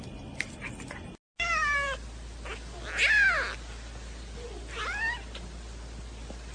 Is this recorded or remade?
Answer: recorded